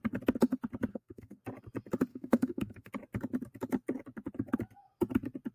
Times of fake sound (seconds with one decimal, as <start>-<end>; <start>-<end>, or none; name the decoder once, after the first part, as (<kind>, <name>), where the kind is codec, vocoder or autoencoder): 0.9-1.4 (codec, SNAC); 2.1-2.9

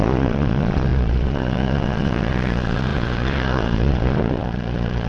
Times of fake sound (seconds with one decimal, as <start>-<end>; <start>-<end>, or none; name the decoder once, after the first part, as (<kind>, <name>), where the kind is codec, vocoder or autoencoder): 0.0-5.1 (vocoder, Vocos)

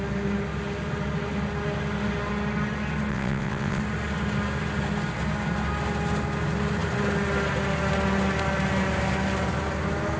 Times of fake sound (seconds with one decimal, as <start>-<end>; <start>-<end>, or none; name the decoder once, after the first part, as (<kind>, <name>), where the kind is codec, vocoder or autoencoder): 3.1-3.8 (vocoder, WaveNeXt)

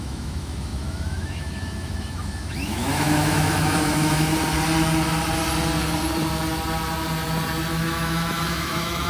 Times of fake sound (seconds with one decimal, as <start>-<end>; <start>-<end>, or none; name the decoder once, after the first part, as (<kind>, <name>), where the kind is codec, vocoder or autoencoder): 0.0-4.3 (autoencoder, DAC-VAE); 7.7-9.1